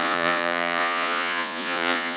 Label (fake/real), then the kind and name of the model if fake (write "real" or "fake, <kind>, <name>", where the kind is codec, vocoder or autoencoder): fake, vocoder, Vocos